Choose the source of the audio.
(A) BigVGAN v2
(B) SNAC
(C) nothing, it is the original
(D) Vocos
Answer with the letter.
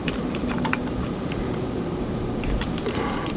A